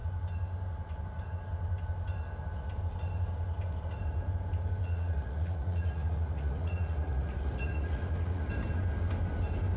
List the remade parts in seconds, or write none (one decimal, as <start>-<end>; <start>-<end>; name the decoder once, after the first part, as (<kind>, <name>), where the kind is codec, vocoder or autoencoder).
4.8-8.5 (vocoder, Vocos)